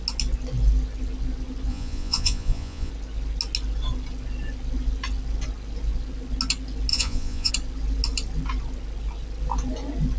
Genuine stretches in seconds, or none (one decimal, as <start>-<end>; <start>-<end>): 0.0-1.7; 2.9-6.9; 7.5-10.2

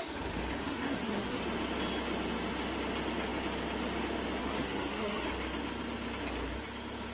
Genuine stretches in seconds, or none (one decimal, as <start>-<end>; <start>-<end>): 0.0-0.6; 1.4-4.4; 5.3-7.1